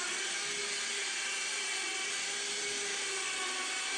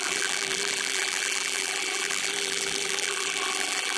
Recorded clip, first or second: first